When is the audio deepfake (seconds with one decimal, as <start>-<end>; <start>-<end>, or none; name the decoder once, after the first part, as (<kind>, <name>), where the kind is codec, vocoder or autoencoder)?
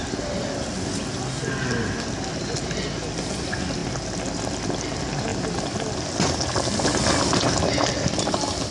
none